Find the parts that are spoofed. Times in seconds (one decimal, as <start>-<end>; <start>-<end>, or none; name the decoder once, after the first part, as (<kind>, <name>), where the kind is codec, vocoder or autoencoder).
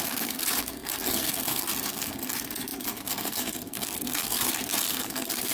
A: 0.0-5.5 (codec, SNAC)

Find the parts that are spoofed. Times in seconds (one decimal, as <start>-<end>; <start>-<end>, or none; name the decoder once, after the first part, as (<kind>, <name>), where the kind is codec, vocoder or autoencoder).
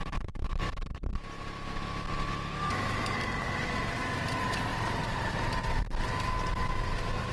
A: 0.0-1.1 (vocoder, BigVGAN v2); 3.5-4.7; 6.7-7.3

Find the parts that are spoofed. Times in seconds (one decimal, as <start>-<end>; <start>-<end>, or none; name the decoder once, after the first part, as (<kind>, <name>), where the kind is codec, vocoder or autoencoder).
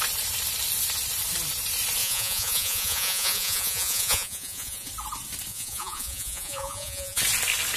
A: 2.0-4.9 (vocoder, Vocos); 5.5-7.2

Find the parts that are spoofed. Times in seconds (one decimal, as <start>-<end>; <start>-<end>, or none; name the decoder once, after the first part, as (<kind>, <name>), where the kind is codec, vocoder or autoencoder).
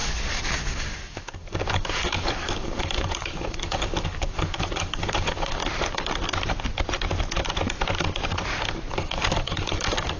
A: 0.0-5.6 (codec, DAC); 8.9-10.2